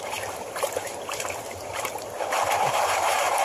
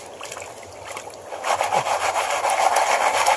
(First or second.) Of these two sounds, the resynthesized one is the first